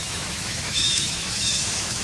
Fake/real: fake